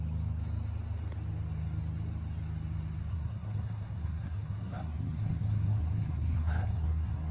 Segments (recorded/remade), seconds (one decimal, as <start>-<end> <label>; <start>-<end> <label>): 0.0-3.1 recorded; 3.1-7.3 remade